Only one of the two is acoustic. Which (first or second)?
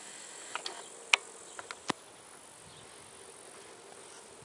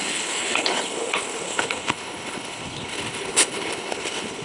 first